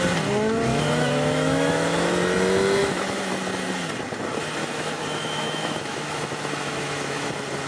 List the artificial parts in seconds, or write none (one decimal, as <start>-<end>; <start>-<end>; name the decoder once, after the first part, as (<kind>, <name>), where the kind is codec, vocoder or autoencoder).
0.7-2.1 (autoencoder, DAC-VAE); 2.8-3.3; 4.6-7.3